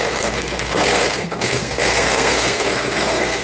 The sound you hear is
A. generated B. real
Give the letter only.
A